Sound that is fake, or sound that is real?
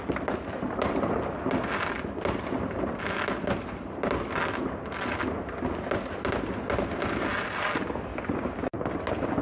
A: real